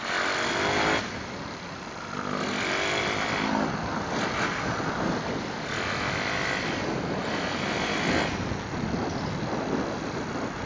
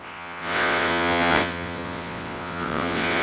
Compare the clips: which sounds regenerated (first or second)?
second